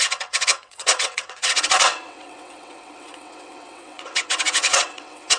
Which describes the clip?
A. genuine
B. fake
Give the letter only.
B